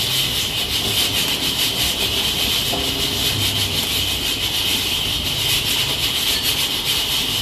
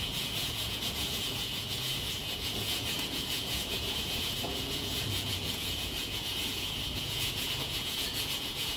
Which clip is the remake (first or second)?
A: second